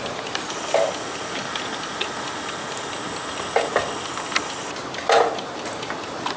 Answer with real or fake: real